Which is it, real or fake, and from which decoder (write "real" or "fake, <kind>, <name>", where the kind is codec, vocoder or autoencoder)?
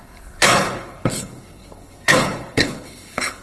fake, codec, HILCodec